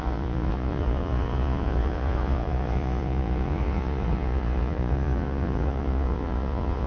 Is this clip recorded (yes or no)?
no